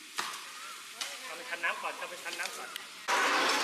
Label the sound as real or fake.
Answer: real